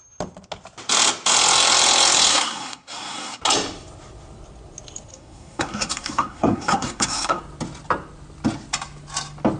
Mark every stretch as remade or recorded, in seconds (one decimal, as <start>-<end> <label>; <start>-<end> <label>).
0.0-2.3 recorded; 2.3-3.4 remade; 3.4-5.1 recorded; 5.1-7.4 remade; 7.4-9.6 recorded